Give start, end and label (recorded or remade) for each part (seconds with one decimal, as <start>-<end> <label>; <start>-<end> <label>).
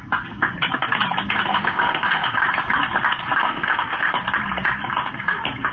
0.0-1.5 recorded; 1.5-2.4 remade; 2.4-3.4 recorded; 3.4-4.1 remade; 4.1-5.7 recorded